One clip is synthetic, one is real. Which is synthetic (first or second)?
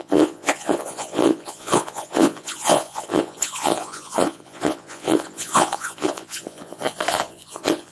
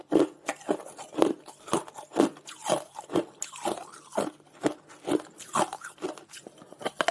first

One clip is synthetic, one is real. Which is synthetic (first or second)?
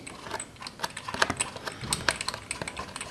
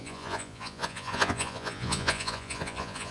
second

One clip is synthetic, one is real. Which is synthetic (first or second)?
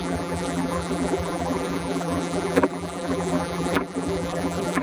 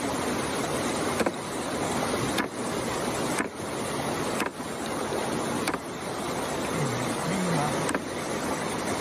first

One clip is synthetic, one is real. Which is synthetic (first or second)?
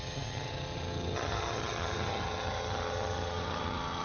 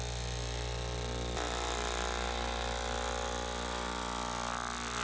first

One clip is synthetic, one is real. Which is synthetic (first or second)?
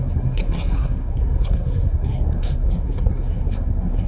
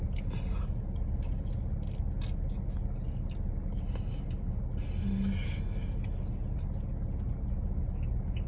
first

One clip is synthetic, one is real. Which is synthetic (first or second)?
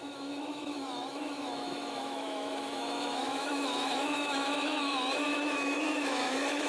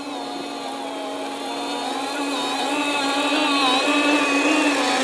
first